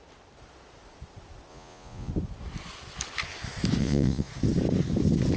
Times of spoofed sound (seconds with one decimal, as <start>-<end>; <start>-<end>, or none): 1.5-2.1; 3.8-4.3